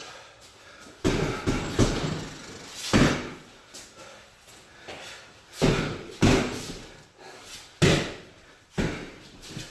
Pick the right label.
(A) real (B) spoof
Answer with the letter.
A